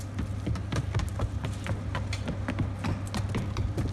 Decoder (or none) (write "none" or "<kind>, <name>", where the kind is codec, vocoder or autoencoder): none